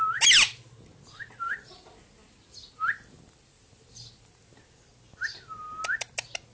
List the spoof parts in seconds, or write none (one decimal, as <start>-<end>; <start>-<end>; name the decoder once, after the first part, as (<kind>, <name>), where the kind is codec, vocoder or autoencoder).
none